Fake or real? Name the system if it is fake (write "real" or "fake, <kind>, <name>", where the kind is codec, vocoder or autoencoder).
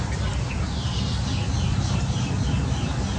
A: real